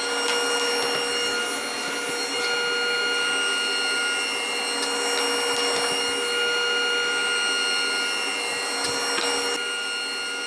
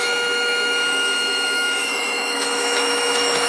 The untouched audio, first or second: first